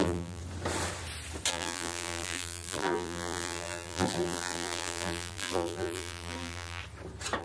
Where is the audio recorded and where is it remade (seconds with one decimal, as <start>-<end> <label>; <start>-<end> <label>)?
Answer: 0.0-0.4 remade; 0.4-1.5 recorded; 1.5-6.8 remade; 6.8-7.4 recorded